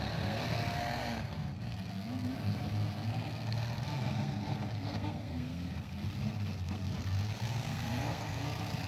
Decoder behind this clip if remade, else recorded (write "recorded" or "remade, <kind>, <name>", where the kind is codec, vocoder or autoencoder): remade, codec, SNAC